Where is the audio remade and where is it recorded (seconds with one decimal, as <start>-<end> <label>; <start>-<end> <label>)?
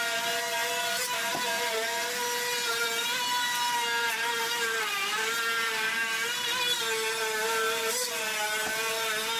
0.0-9.4 recorded